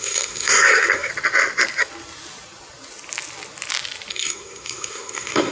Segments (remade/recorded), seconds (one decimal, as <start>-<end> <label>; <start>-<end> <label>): 0.0-1.1 remade; 1.1-4.1 recorded; 4.1-5.5 remade